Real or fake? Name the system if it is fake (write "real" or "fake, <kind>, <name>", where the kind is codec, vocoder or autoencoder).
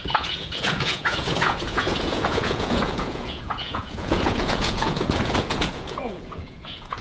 fake, vocoder, Vocos